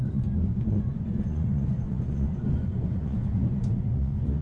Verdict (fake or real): fake